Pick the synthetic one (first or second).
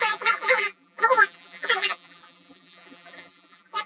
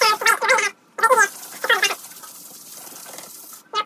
first